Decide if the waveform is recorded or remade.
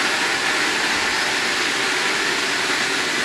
recorded